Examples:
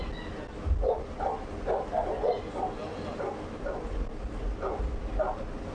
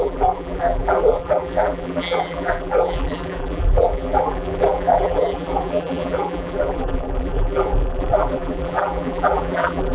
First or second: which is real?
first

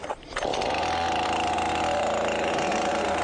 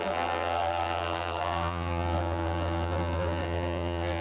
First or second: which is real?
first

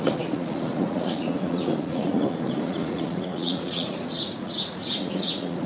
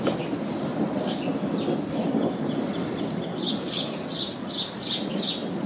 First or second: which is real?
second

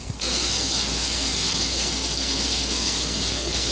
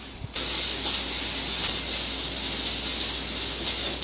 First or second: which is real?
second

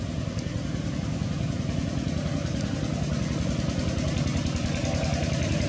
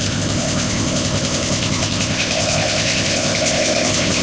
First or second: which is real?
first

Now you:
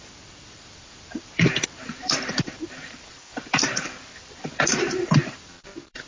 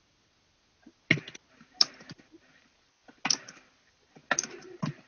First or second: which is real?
second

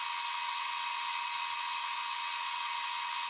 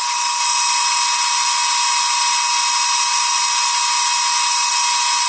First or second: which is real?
second